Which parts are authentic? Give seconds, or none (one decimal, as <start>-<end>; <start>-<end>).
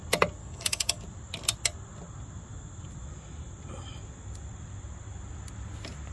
0.0-0.4; 1.0-6.1